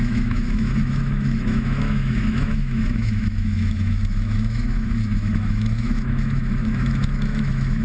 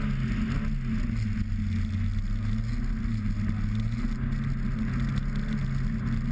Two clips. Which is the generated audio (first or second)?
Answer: first